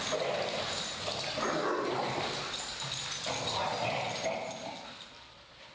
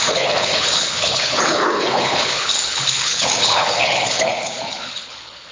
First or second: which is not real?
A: second